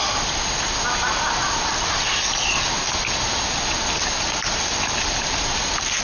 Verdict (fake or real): real